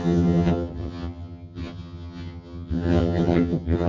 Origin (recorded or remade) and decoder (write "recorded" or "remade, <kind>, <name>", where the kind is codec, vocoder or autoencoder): remade, vocoder, HiFi-GAN